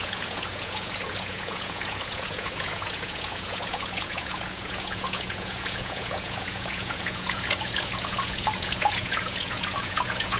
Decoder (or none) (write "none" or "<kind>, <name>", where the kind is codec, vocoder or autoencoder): vocoder, Vocos